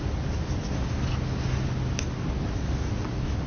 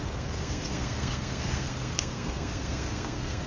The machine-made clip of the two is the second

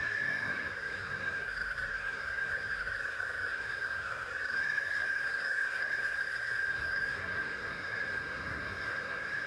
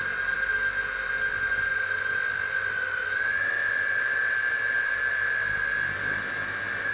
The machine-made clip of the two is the first